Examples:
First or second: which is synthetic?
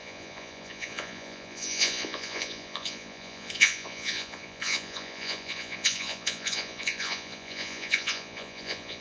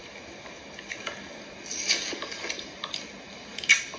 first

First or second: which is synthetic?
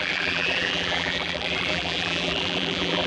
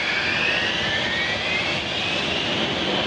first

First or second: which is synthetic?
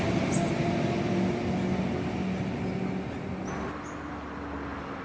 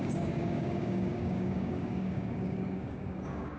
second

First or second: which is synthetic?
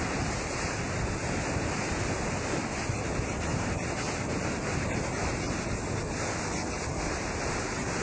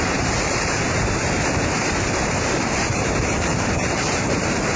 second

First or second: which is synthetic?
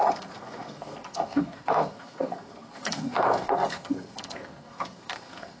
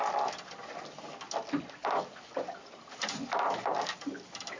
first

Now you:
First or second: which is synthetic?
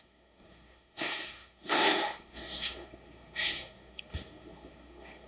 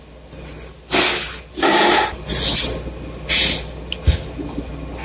first